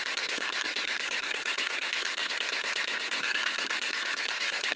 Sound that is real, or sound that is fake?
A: fake